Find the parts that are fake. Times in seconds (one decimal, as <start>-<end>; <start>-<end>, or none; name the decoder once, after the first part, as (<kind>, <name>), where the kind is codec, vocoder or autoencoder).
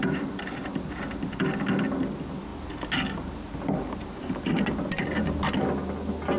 none